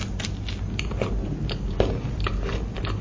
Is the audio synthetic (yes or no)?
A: no